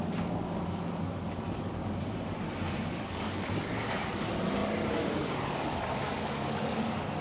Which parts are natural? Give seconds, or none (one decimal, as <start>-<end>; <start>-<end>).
1.8-2.9